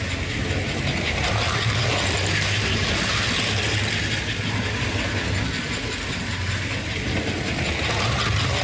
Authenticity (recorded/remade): recorded